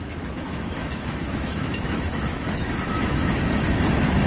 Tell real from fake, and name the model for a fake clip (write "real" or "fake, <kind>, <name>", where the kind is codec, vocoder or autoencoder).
fake, autoencoder, DAC-VAE